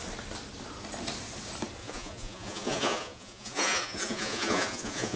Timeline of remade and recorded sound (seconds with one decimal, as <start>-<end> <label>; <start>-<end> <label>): 0.0-1.8 recorded; 1.8-5.2 remade